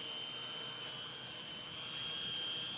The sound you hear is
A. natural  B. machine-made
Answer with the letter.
A